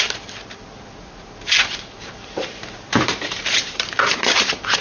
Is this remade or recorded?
remade